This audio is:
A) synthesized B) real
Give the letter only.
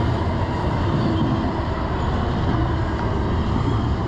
B